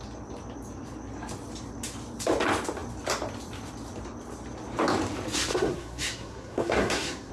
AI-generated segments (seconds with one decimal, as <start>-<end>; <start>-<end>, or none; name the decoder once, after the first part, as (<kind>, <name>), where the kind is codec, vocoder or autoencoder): 5.5-7.3 (codec, SNAC)